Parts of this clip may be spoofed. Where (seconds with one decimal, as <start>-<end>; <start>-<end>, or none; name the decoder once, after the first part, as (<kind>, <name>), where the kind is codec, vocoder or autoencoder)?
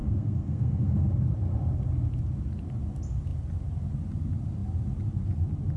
0.0-1.1 (codec, SNAC)